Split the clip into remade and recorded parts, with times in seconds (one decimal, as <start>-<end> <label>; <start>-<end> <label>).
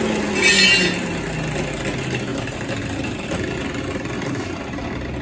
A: 0.0-2.3 recorded; 2.3-3.3 remade; 3.3-5.2 recorded